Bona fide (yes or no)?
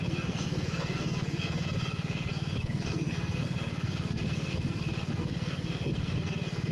no